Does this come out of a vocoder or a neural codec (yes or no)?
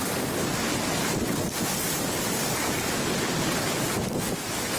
no